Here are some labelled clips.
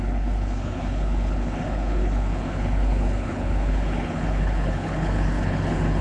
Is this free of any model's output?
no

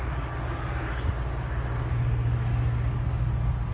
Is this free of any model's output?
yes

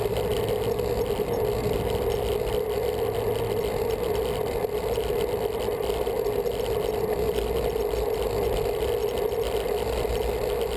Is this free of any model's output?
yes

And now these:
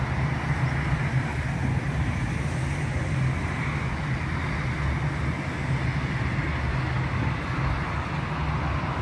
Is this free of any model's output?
yes